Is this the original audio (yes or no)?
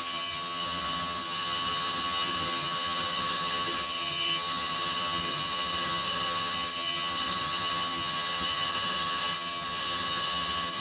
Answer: no